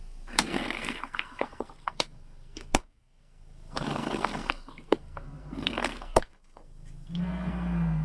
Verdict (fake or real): fake